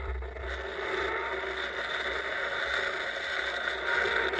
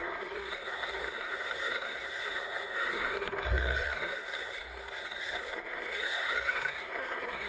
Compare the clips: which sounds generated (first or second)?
second